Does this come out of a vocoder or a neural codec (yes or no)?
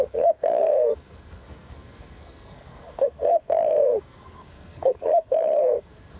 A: yes